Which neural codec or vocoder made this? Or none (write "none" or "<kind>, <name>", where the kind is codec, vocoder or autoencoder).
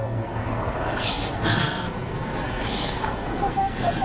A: codec, SNAC